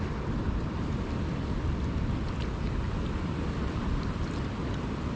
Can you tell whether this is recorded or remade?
recorded